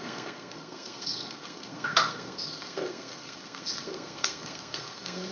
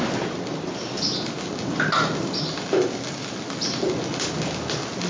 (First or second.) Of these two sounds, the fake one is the first